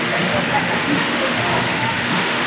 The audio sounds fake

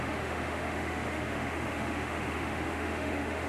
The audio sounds fake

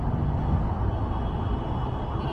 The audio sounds real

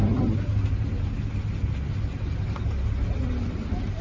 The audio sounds real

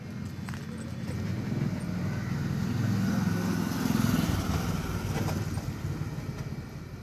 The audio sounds real